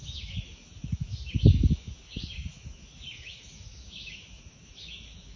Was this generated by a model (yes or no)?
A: yes